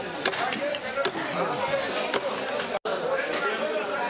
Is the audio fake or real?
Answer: real